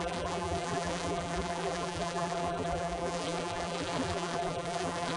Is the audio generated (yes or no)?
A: yes